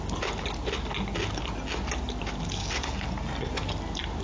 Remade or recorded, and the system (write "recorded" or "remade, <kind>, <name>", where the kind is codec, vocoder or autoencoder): recorded